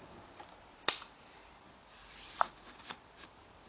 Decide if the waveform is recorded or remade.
recorded